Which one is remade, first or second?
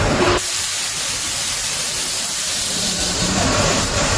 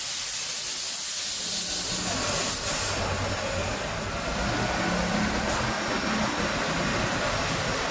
first